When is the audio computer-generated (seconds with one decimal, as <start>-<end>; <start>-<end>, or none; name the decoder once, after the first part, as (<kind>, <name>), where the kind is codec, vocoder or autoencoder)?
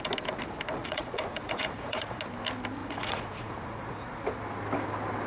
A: 0.8-2.2 (vocoder, Vocos); 2.8-4.2